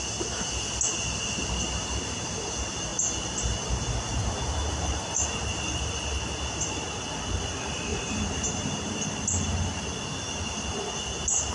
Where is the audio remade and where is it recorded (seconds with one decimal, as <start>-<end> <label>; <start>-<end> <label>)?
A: 0.0-7.9 recorded; 7.9-8.9 remade; 8.9-11.5 recorded